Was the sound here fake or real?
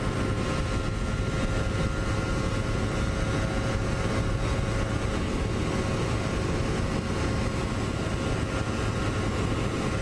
real